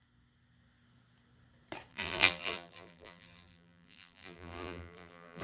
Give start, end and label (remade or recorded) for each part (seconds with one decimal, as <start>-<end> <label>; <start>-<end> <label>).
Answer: 0.0-1.9 recorded; 1.9-5.4 remade